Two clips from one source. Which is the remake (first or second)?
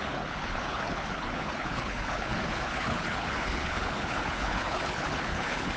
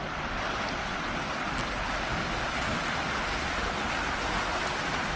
first